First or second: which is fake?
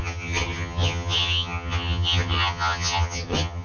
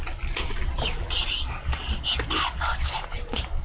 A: first